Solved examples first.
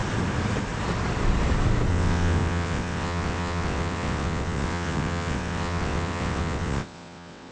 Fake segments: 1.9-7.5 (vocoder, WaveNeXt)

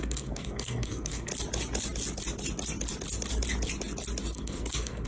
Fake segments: 0.0-1.3 (codec, SNAC); 4.3-5.1

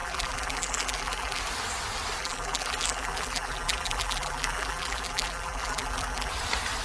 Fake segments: 0.0-1.4 (vocoder, BigVGAN v2); 2.2-6.3